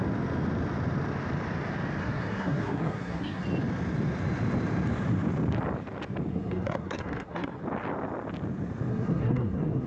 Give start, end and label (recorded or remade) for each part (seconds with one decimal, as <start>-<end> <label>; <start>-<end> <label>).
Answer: 0.0-2.0 recorded; 2.0-3.4 remade; 3.4-6.3 recorded; 6.3-7.6 remade; 7.6-8.9 recorded; 8.9-9.9 remade